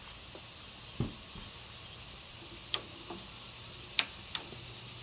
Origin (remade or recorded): recorded